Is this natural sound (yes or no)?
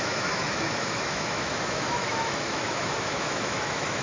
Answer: no